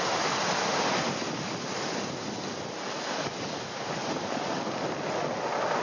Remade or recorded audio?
recorded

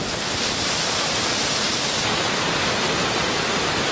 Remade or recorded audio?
recorded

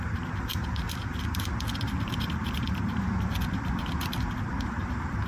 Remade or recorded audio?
remade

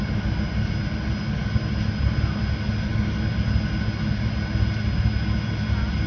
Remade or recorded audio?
recorded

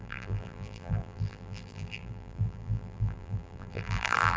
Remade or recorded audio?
remade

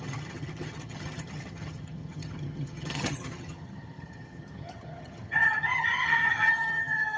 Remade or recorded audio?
remade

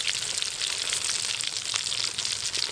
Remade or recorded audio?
recorded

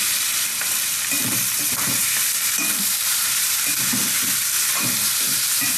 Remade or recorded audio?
remade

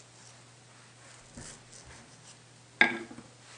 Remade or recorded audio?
recorded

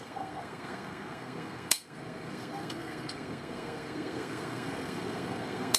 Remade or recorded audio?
remade